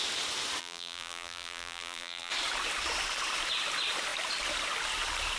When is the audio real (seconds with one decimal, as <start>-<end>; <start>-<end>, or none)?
0.0-0.6; 2.3-5.4